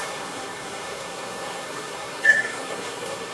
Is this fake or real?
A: fake